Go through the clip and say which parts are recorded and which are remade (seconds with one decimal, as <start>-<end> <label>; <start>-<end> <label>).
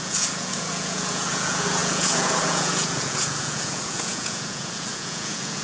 0.0-5.6 remade